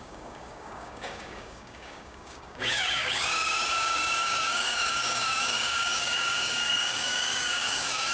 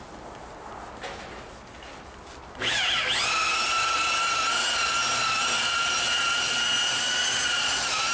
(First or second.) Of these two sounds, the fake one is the first